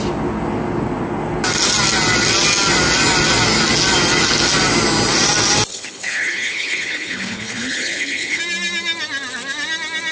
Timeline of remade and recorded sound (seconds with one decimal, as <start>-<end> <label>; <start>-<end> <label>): 0.0-5.7 recorded; 5.7-8.4 remade; 8.4-10.1 recorded